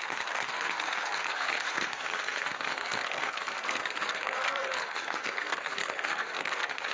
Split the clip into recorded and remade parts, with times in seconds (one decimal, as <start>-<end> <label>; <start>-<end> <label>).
0.0-6.9 remade